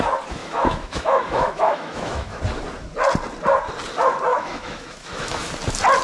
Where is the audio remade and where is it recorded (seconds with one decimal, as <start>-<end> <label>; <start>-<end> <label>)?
0.0-0.4 recorded; 0.4-2.4 remade; 2.4-4.3 recorded; 4.3-5.5 remade; 5.5-6.0 recorded